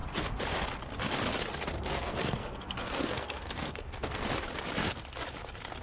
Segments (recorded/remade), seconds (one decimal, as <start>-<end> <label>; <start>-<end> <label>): 0.0-1.7 recorded; 1.7-4.3 remade; 4.3-5.8 recorded